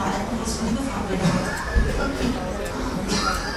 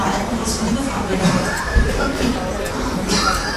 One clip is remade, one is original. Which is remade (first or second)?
second